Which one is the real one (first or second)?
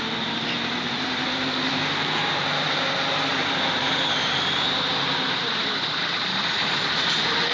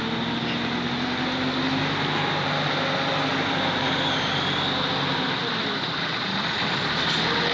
second